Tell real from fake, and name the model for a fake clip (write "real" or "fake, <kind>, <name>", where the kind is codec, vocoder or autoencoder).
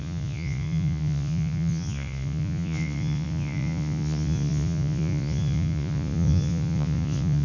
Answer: fake, vocoder, Vocos